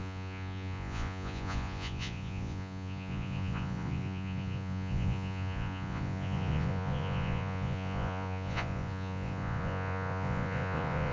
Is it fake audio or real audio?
fake